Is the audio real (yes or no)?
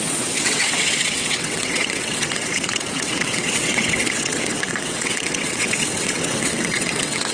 no